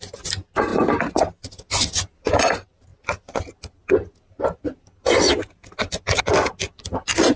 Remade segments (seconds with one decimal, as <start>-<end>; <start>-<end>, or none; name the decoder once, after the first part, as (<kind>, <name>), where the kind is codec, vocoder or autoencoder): none